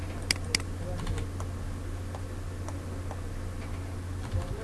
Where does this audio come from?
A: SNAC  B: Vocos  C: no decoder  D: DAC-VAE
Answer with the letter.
C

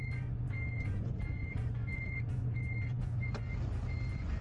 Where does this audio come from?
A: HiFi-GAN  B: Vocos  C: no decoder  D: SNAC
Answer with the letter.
B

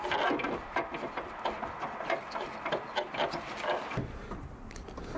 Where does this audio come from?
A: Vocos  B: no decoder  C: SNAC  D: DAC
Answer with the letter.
B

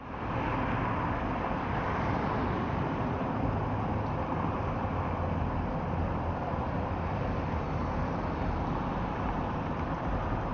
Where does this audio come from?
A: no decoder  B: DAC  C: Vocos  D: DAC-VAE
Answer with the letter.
A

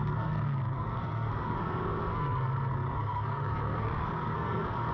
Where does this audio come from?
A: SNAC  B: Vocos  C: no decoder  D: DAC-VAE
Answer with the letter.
A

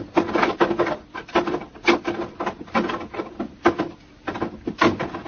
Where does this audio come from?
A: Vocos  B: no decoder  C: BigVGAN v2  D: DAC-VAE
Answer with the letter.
B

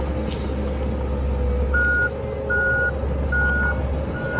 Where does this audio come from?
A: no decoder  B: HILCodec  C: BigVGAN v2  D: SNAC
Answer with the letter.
A